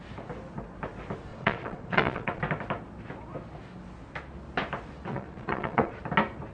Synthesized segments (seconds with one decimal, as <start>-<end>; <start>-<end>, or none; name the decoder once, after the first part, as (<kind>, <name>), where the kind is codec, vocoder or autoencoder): 1.3-2.4 (vocoder, Vocos); 5.1-6.0